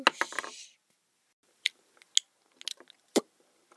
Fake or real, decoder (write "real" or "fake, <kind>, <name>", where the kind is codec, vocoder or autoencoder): real